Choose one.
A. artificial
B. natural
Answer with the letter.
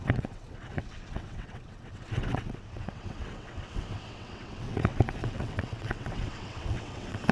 A